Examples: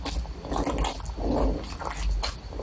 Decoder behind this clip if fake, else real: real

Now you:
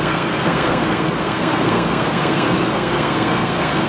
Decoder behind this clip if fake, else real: fake, codec, SNAC